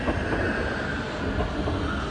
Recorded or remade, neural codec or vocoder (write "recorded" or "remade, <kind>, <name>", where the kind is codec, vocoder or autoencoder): recorded